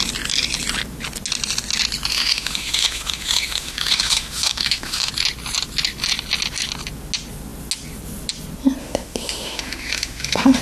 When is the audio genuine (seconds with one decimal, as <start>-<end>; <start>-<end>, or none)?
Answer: 0.0-2.1; 5.1-8.8